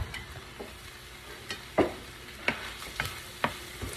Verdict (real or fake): real